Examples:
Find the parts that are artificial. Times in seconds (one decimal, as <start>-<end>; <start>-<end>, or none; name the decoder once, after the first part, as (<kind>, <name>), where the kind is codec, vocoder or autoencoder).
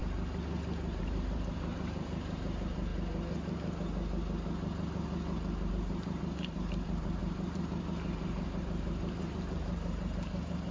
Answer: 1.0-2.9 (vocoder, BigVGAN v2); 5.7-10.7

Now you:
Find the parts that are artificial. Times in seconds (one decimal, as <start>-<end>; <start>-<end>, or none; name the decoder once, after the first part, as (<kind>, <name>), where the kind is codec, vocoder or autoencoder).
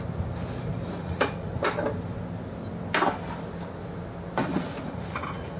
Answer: 1.0-1.5 (vocoder, Vocos); 4.5-5.6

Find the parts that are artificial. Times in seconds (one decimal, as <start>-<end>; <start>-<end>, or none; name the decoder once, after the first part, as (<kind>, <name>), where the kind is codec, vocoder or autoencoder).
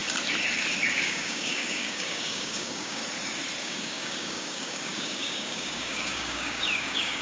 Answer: 0.9-3.0 (codec, DAC); 3.6-7.2